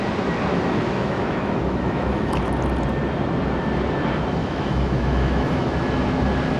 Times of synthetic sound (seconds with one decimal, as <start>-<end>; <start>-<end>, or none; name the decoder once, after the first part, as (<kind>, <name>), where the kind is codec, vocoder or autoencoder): 0.5-2.4 (autoencoder, DAC-VAE); 4.4-5.7